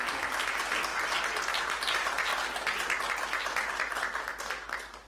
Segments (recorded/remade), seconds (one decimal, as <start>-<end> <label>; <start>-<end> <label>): 0.0-5.1 recorded